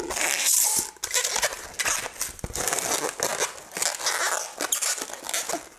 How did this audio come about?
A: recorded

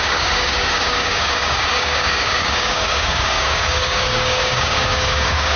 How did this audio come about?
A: remade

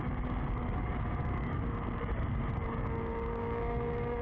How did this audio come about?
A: remade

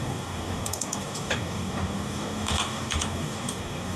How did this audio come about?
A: remade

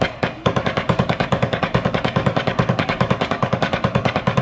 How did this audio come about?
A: remade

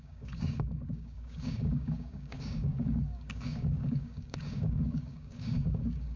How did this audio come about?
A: remade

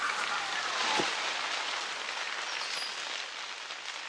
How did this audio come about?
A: recorded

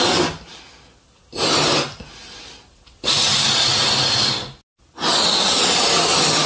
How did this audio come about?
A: recorded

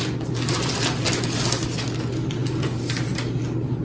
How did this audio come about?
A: recorded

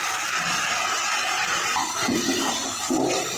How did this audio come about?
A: recorded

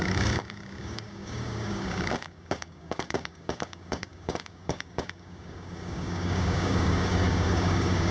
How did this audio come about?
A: remade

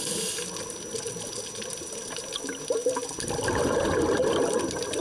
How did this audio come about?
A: recorded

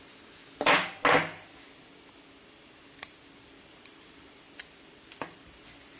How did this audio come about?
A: recorded